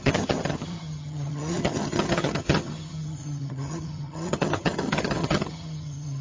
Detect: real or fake fake